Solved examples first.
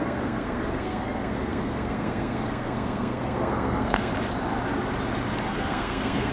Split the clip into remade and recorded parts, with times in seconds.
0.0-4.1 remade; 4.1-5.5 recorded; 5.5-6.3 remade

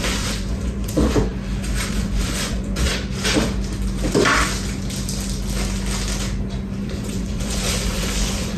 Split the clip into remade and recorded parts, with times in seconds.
0.0-1.3 remade; 1.3-1.9 recorded; 1.9-2.9 remade; 2.9-6.8 recorded; 6.8-8.6 remade

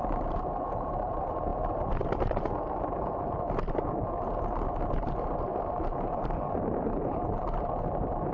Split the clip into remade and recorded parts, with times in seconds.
0.0-8.3 remade

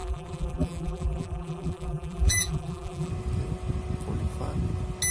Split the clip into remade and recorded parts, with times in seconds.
0.0-3.1 remade; 3.1-5.1 recorded